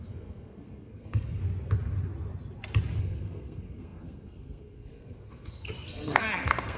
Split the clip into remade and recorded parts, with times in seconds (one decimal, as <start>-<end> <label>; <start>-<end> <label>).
0.0-1.4 remade; 1.4-3.0 recorded; 3.0-6.8 remade